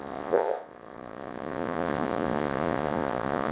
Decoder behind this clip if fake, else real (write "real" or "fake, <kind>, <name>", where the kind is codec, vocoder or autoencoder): fake, vocoder, Vocos